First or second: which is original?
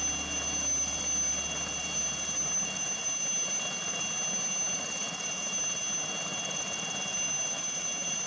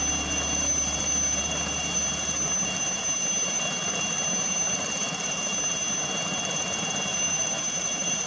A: first